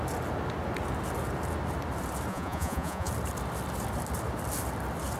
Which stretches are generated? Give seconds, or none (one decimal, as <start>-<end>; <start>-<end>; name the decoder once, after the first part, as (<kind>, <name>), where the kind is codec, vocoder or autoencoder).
2.3-3.1 (vocoder, Vocos)